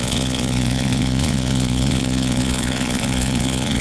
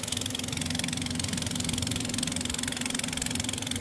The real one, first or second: second